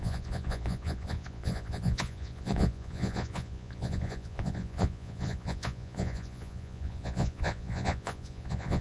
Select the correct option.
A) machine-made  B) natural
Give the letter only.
A